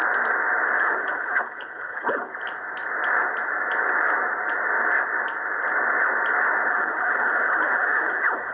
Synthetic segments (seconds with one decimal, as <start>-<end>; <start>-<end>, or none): 0.8-2.3; 6.7-8.5